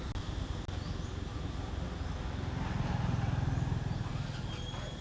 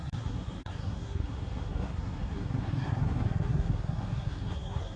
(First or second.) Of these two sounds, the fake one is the second